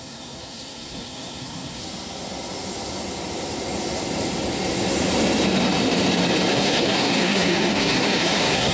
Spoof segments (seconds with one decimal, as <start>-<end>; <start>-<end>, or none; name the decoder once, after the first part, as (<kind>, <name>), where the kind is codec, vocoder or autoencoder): 0.0-1.8 (codec, SNAC); 6.5-8.7